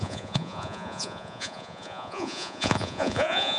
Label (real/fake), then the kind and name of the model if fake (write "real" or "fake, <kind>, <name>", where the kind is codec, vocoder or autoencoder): fake, vocoder, Vocos